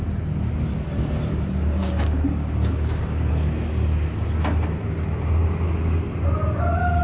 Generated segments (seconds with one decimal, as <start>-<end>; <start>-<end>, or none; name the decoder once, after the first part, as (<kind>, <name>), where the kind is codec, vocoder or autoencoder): 1.8-3.3 (codec, DAC)